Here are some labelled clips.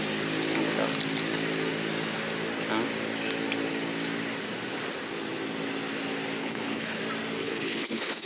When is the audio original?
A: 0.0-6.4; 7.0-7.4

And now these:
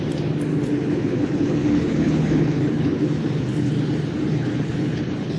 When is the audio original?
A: 0.0-0.5; 3.7-4.3

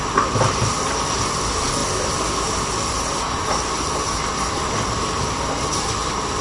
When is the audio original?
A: 0.0-6.4

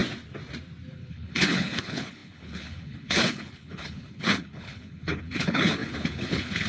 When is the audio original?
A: 0.0-0.9